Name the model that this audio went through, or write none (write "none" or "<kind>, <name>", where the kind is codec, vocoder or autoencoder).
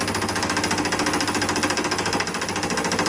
none